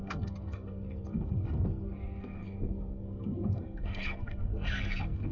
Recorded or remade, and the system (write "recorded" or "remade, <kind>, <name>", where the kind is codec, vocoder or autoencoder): remade, codec, SNAC